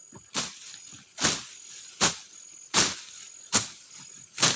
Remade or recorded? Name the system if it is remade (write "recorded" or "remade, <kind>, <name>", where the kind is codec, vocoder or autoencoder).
recorded